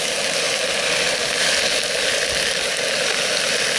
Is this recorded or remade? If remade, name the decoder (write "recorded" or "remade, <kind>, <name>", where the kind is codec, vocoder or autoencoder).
recorded